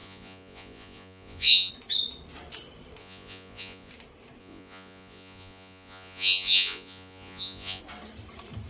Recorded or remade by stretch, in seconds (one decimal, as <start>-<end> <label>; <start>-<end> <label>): 0.0-1.7 remade; 1.7-3.0 recorded; 3.0-3.9 remade; 3.9-4.4 recorded; 4.4-7.8 remade; 7.8-8.7 recorded